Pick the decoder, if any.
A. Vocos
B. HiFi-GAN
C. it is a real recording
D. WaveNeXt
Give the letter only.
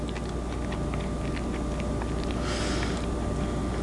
C